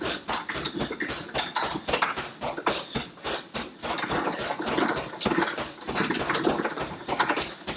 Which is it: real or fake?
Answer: real